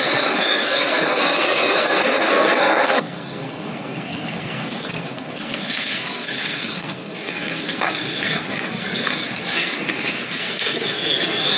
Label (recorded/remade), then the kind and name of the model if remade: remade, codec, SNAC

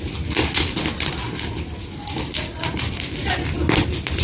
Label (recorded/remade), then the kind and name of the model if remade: recorded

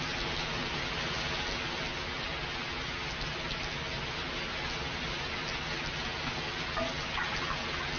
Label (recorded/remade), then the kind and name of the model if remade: recorded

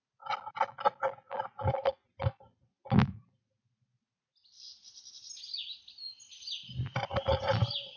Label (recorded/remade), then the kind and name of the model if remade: recorded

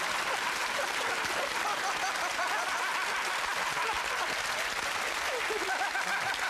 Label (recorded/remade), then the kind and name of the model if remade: recorded